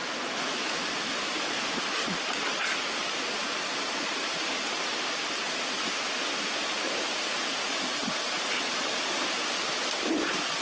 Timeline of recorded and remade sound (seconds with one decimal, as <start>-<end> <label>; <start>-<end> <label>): 0.0-0.9 remade; 0.9-10.6 recorded